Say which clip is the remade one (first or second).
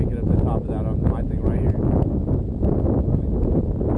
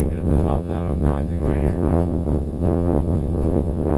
second